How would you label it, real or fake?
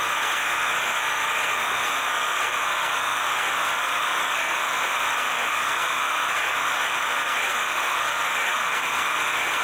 fake